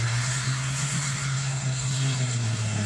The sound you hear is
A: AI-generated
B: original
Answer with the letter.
A